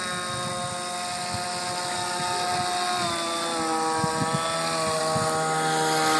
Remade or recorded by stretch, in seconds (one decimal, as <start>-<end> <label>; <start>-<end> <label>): 0.0-6.2 recorded